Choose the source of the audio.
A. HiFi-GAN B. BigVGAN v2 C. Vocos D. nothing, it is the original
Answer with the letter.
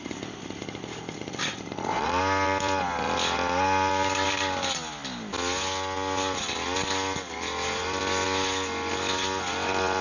D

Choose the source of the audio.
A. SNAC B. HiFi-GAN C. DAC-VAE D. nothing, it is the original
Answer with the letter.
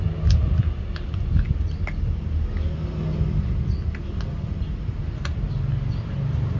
D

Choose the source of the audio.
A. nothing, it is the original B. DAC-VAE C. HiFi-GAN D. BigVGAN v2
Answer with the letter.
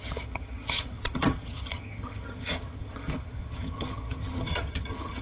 C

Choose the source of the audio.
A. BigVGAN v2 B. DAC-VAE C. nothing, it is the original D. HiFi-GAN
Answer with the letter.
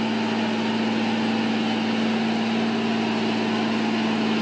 C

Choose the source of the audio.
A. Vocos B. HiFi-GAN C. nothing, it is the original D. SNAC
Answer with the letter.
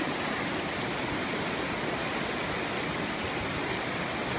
C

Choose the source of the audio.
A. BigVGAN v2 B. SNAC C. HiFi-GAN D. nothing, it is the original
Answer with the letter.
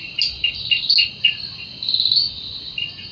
D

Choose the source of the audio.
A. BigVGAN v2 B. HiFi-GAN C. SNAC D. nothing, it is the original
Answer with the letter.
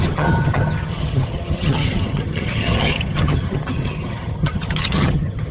B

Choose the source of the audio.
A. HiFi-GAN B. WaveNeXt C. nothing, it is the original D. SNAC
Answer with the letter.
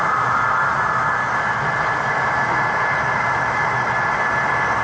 C